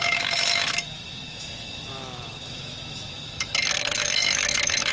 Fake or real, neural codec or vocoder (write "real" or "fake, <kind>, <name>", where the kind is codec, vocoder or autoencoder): fake, autoencoder, DAC-VAE